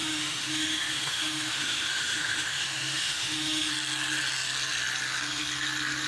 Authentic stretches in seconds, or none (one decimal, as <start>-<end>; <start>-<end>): 3.7-6.1